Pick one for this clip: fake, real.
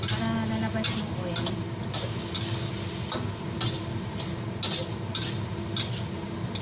real